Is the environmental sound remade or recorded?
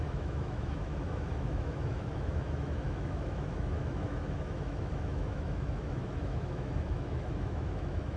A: remade